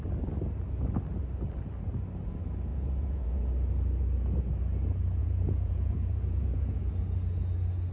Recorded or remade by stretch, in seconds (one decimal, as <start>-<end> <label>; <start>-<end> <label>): 0.0-2.7 recorded; 2.7-3.4 remade; 3.4-5.2 recorded; 5.2-6.8 remade; 6.8-7.9 recorded